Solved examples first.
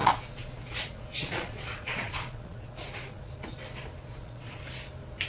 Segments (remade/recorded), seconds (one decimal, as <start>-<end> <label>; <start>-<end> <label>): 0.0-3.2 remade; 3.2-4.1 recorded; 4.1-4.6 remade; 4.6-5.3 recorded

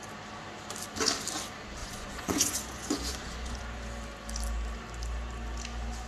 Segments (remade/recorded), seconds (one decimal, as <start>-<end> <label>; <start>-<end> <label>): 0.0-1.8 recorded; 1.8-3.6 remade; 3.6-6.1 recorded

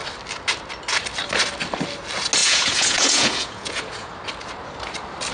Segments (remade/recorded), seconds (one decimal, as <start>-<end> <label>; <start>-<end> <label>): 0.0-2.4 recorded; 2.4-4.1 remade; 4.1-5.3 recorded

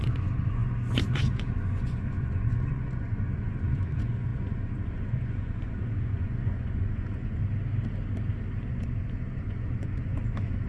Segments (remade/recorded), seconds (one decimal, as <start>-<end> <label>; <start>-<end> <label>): 0.0-7.4 remade; 7.4-8.7 recorded; 8.7-10.7 remade

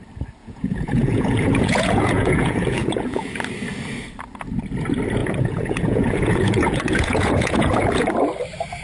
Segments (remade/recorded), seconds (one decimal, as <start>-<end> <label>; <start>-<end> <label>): 0.0-0.4 recorded; 0.4-3.4 remade; 3.4-5.2 recorded; 5.2-8.1 remade; 8.1-8.8 recorded

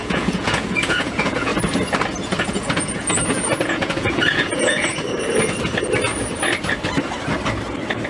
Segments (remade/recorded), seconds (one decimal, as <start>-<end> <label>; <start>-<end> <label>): 0.0-1.5 remade; 1.5-2.4 recorded; 2.4-4.9 remade; 4.9-8.1 recorded

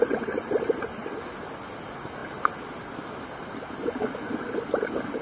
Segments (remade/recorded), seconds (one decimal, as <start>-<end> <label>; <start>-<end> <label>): 0.0-5.2 recorded